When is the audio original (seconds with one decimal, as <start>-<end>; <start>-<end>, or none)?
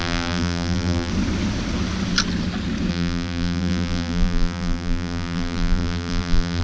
1.1-2.9